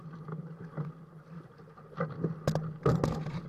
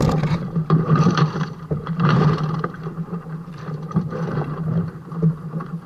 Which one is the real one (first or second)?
first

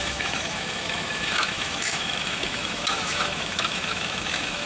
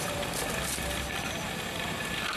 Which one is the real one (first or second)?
second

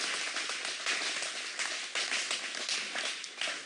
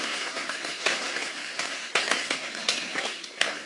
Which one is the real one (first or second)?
first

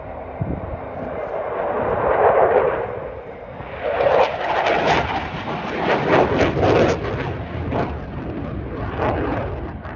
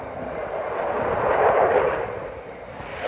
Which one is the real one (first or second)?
first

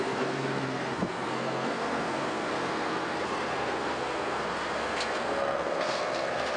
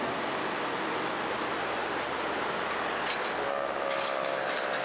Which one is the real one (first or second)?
second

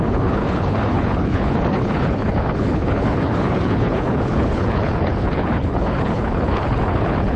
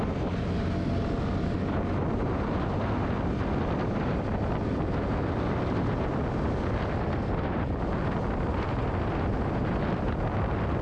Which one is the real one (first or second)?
second